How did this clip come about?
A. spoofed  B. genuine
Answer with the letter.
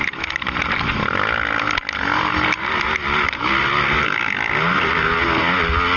B